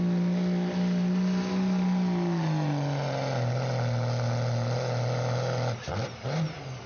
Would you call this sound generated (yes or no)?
no